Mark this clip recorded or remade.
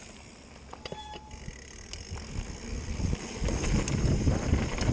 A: recorded